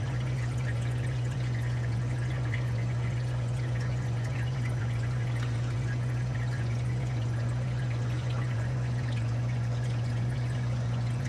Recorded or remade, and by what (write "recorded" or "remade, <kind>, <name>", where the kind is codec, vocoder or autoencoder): remade, vocoder, Vocos